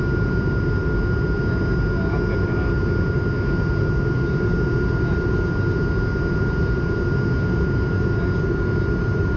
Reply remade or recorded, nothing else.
recorded